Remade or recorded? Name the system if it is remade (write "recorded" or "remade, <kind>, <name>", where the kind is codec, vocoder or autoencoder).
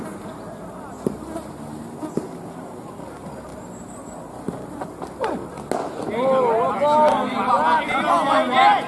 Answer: recorded